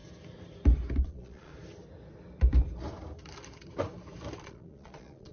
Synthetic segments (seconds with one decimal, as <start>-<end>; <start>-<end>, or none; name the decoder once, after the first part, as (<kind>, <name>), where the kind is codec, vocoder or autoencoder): 1.0-1.5 (vocoder, Vocos); 4.4-5.3

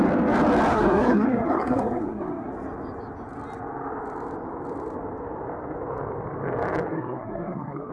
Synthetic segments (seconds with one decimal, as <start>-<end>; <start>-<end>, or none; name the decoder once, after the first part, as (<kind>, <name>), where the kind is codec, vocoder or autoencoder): 0.7-2.5 (codec, SNAC); 6.9-7.9

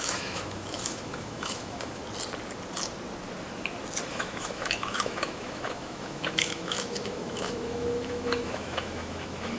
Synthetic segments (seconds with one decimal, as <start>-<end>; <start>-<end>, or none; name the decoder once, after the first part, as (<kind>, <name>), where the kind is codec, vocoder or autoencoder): 0.0-2.0 (autoencoder, DAC-VAE); 4.1-9.6

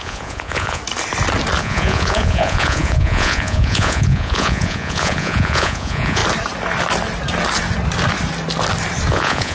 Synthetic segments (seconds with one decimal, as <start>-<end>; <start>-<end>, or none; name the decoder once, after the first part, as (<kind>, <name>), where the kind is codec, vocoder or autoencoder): 0.0-0.8 (vocoder, Vocos); 1.6-6.2; 9.1-9.5

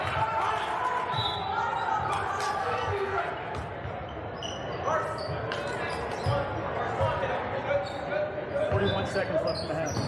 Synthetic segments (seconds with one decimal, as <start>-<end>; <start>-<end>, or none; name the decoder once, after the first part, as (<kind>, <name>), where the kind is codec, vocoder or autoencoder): 2.6-3.2 (codec, SNAC)

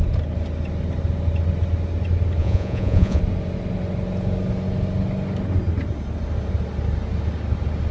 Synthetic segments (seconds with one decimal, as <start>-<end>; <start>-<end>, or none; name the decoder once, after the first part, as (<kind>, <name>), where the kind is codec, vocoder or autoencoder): 2.4-3.2 (vocoder, Vocos)

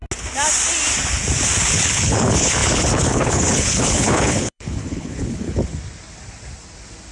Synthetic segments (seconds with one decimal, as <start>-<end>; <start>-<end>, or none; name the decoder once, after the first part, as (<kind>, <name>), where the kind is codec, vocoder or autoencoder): 1.6-5.7 (codec, HILCodec)

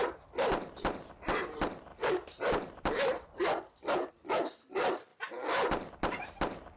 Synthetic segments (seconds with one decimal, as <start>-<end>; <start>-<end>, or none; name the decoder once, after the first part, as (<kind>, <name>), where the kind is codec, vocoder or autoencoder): 1.9-4.1 (vocoder, BigVGAN v2); 5.1-5.9